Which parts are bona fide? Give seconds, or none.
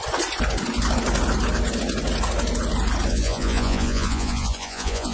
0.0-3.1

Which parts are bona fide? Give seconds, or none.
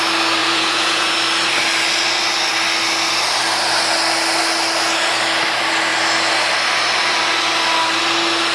0.0-0.4; 1.1-8.5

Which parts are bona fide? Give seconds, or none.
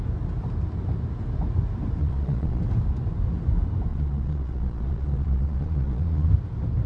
0.0-2.0; 2.6-3.9; 6.3-6.9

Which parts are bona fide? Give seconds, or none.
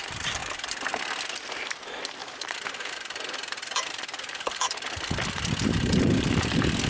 0.0-0.4; 0.9-2.2; 6.3-6.9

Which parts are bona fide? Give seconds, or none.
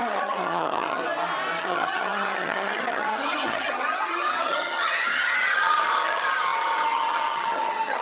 1.0-1.6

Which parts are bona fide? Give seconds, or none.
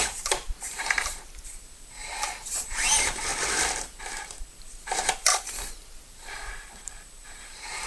2.0-2.6; 3.3-4.0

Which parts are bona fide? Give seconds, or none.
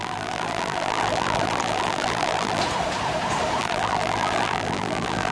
2.6-3.6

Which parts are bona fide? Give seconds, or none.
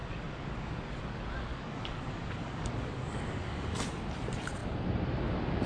1.0-1.5; 3.7-5.7